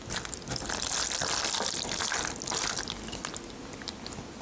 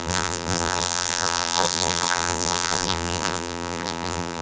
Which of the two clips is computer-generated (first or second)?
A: second